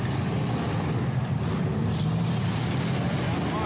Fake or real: real